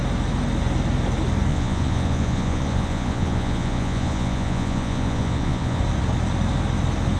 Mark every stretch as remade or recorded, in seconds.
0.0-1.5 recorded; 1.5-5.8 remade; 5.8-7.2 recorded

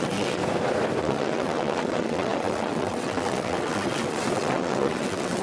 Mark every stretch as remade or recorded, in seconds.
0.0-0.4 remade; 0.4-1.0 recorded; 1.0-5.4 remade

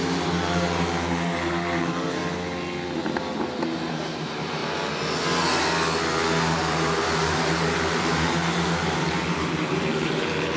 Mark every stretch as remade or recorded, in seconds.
0.0-2.2 remade; 2.2-3.9 recorded; 3.9-4.6 remade; 4.6-6.6 recorded; 6.6-10.6 remade

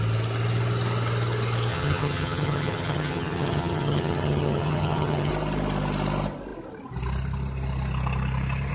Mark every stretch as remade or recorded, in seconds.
0.0-1.7 recorded; 1.7-5.3 remade; 5.3-8.7 recorded